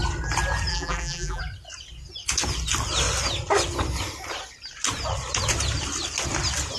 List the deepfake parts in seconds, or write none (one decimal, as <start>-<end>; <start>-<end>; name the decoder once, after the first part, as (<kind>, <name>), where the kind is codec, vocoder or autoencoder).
0.7-1.4 (vocoder, BigVGAN v2)